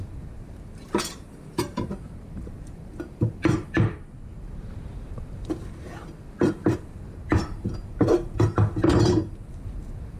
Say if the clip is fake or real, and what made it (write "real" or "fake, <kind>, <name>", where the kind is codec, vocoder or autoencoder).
fake, vocoder, BigVGAN v2